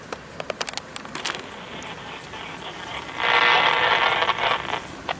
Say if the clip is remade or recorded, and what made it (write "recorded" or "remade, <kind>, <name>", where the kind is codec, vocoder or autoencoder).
recorded